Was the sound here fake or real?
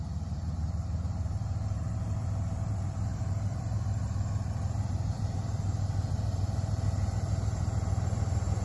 fake